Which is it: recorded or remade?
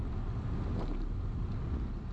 recorded